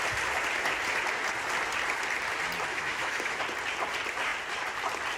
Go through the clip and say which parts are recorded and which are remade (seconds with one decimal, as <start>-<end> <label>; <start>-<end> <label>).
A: 0.0-2.7 recorded; 2.7-3.4 remade; 3.4-5.2 recorded